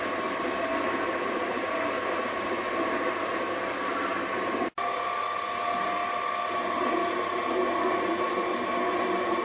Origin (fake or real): real